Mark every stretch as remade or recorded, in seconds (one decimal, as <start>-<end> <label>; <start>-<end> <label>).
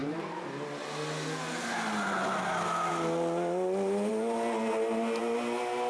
0.0-5.9 recorded